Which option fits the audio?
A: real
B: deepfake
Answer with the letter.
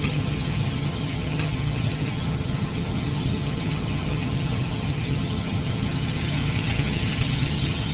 B